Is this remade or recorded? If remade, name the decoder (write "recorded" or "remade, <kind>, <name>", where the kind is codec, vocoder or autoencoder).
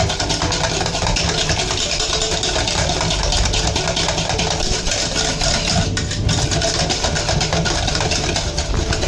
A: recorded